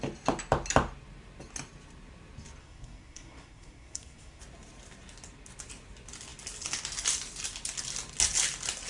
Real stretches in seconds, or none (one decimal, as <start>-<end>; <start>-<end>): 0.0-2.6; 4.4-8.9